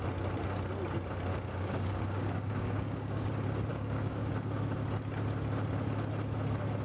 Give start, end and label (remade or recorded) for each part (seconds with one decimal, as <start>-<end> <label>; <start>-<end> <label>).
0.0-1.3 recorded; 1.3-3.3 remade; 3.3-3.7 recorded; 3.7-4.3 remade; 4.3-6.8 recorded